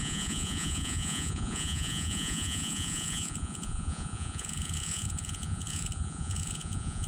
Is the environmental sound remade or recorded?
remade